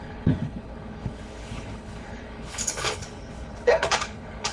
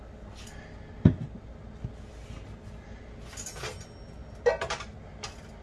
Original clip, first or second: second